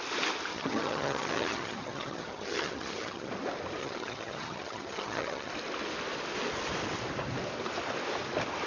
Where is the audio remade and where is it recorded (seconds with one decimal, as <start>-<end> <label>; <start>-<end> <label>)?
0.0-0.5 recorded; 0.5-3.3 remade; 3.3-3.8 recorded; 3.8-5.5 remade; 5.5-8.7 recorded